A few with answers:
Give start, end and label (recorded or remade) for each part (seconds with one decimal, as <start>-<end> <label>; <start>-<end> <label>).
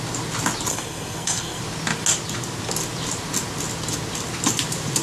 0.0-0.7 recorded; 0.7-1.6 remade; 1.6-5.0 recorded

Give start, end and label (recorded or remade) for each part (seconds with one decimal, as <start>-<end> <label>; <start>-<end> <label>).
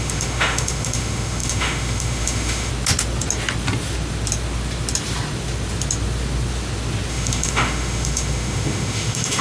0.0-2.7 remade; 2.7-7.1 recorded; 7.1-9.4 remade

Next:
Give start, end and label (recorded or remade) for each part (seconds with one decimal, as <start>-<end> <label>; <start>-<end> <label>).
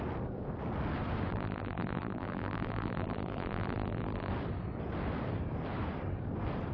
0.0-1.3 recorded; 1.3-4.3 remade; 4.3-6.7 recorded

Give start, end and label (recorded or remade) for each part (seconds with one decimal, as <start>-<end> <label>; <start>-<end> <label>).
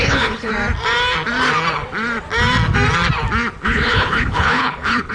0.0-0.5 remade; 0.5-3.6 recorded; 3.6-5.1 remade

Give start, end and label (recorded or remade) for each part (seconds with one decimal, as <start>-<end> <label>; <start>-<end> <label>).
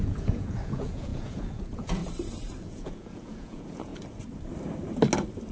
0.0-2.0 remade; 2.0-2.6 recorded; 2.6-3.9 remade; 3.9-5.5 recorded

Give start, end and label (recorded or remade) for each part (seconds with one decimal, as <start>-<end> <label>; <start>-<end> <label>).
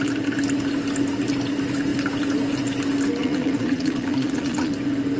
0.0-3.2 recorded; 3.2-4.7 remade; 4.7-5.2 recorded